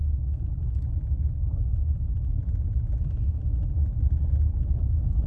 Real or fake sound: real